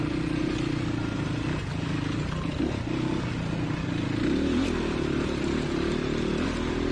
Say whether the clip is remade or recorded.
recorded